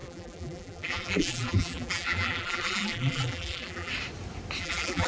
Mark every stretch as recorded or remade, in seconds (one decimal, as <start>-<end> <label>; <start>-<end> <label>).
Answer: 0.0-3.9 remade; 3.9-4.6 recorded; 4.6-5.1 remade